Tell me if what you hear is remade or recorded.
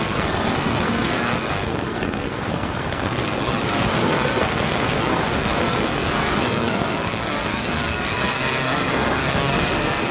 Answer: remade